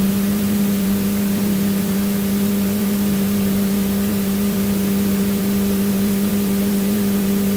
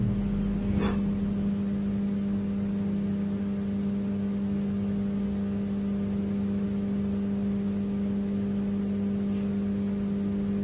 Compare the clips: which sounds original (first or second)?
second